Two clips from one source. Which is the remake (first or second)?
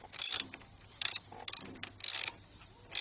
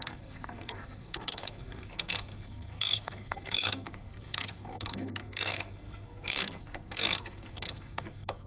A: second